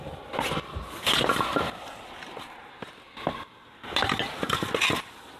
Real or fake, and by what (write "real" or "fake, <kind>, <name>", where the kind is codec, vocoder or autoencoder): real